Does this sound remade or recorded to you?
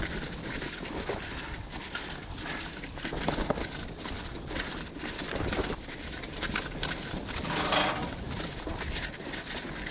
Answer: recorded